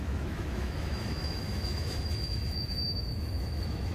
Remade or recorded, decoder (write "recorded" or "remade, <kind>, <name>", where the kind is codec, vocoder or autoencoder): remade, autoencoder, DAC-VAE